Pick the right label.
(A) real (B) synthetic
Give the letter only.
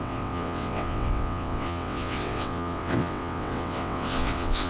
B